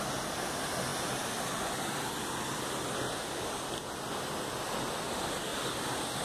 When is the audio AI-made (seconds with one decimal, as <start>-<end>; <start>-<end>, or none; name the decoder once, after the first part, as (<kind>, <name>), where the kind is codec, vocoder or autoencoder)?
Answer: 5.5-6.2 (vocoder, BigVGAN v2)